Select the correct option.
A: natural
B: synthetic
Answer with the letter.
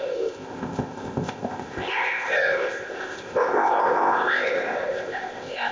B